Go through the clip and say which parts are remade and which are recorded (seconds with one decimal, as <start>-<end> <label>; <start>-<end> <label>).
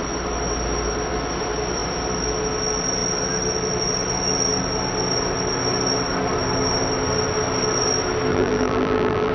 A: 0.0-8.3 recorded; 8.3-9.3 remade